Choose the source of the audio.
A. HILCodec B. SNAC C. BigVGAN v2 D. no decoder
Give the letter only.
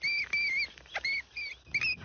D